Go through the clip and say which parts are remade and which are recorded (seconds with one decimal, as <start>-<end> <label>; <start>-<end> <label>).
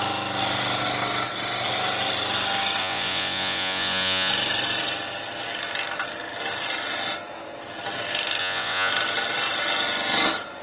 0.0-2.8 recorded; 2.8-4.3 remade; 4.3-8.4 recorded; 8.4-8.9 remade; 8.9-10.6 recorded